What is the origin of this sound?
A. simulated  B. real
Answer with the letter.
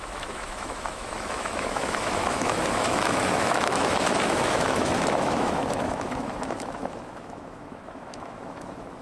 A